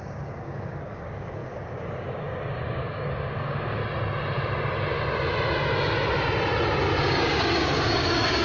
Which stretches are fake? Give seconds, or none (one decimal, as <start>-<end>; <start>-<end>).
0.0-3.8; 7.0-8.4